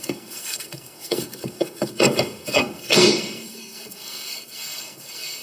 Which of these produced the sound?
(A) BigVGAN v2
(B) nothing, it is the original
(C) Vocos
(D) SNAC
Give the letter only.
D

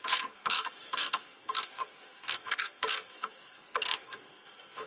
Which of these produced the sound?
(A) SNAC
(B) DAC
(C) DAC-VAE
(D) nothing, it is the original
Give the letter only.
A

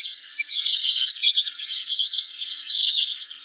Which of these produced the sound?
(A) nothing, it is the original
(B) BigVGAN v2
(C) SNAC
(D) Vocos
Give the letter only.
C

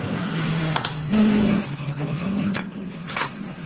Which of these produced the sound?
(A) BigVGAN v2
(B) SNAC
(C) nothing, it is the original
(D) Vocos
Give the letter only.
B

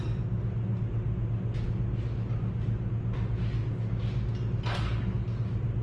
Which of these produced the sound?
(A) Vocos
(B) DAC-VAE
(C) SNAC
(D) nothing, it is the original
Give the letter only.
D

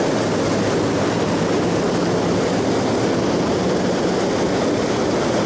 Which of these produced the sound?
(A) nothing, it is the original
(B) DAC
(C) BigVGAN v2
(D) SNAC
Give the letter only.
A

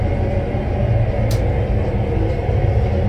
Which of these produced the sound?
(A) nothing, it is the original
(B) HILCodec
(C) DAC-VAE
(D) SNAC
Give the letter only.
A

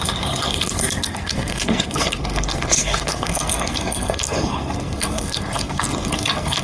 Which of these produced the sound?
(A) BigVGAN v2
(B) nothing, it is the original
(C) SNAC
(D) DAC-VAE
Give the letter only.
C